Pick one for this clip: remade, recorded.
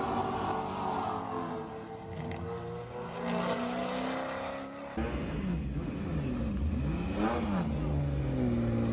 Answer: recorded